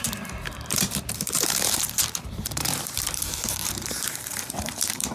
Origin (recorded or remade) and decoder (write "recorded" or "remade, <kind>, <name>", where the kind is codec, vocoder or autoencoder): remade, vocoder, BigVGAN v2